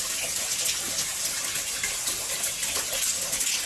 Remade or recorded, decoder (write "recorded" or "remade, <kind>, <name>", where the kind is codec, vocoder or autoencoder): recorded